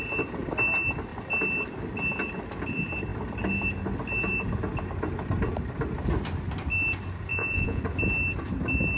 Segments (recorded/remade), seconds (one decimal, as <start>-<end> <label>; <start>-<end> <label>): 0.0-7.3 recorded; 7.3-7.8 remade; 7.8-9.0 recorded